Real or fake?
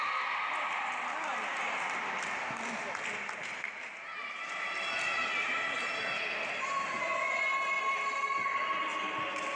real